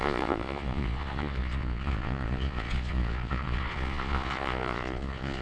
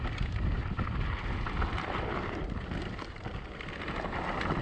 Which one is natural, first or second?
second